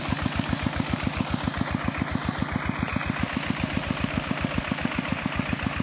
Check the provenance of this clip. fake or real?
real